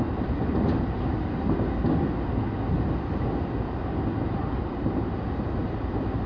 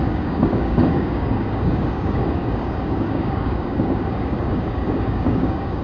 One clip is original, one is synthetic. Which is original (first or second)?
first